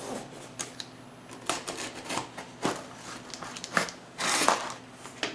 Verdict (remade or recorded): recorded